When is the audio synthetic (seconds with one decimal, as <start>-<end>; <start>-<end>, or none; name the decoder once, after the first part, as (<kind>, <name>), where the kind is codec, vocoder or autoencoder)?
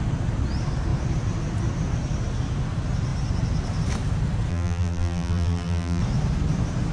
4.5-6.0 (vocoder, BigVGAN v2)